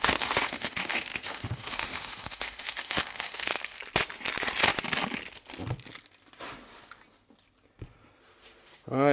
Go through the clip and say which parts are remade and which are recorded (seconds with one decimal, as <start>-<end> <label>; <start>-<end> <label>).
0.0-3.8 remade; 3.8-8.2 recorded; 8.2-9.1 remade